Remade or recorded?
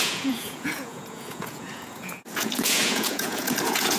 remade